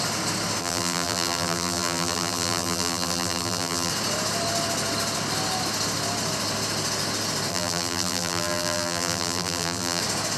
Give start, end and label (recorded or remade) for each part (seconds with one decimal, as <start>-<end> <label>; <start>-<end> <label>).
0.0-0.6 recorded; 0.6-3.9 remade; 3.9-7.5 recorded; 7.5-10.0 remade; 10.0-10.4 recorded